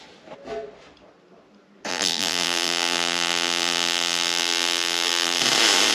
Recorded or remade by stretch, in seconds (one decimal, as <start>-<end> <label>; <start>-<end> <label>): 0.0-1.9 recorded; 1.9-5.4 remade; 5.4-5.9 recorded